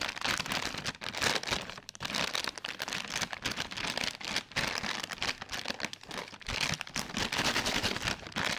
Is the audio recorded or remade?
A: recorded